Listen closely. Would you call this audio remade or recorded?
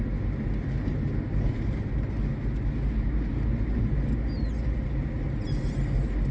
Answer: recorded